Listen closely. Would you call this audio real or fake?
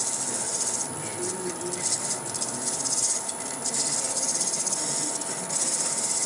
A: real